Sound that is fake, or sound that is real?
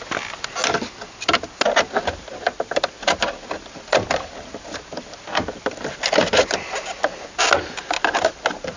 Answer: real